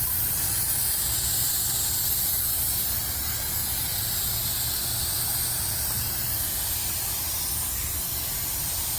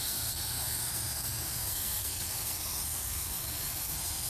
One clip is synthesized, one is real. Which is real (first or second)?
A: first